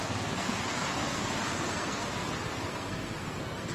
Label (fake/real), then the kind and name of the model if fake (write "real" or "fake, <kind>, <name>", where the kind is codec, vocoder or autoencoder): fake, codec, SNAC